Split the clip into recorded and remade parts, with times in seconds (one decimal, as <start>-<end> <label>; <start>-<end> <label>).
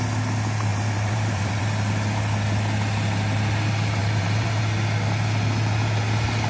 0.0-0.7 recorded; 0.7-1.6 remade; 1.6-4.0 recorded; 4.0-4.6 remade; 4.6-6.5 recorded